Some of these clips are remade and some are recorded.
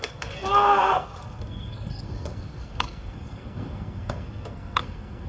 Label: remade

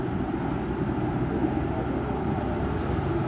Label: recorded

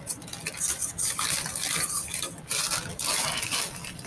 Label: recorded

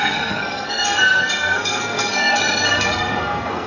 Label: remade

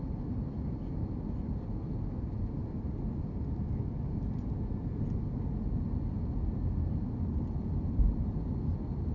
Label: recorded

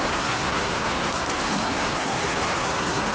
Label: remade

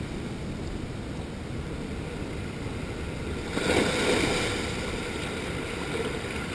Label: recorded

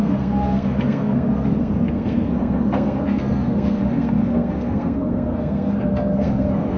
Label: remade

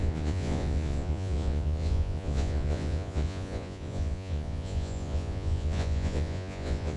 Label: remade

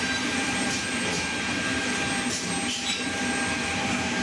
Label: remade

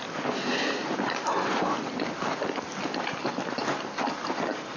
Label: recorded